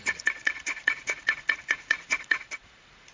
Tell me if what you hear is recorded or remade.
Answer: remade